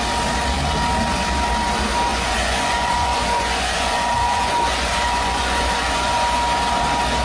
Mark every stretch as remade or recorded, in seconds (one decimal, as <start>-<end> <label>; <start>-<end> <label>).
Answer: 0.0-2.1 recorded; 2.1-6.4 remade; 6.4-7.2 recorded